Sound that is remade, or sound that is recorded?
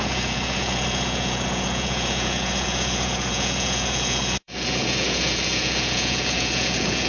remade